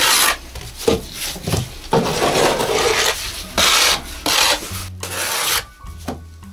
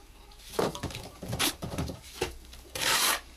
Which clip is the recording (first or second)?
first